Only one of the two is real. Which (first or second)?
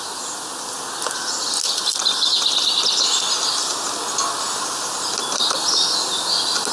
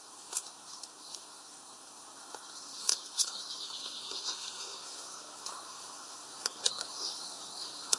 first